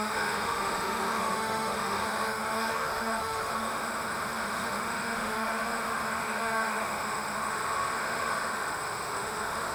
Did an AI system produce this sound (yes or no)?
yes